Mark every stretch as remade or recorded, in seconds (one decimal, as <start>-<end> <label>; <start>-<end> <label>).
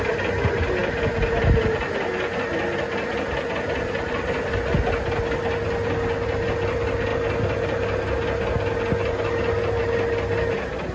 0.0-10.9 recorded